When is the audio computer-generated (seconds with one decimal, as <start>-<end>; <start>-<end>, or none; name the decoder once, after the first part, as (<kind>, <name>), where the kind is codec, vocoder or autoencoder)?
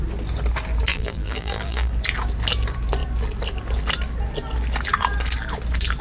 0.9-1.9 (vocoder, BigVGAN v2)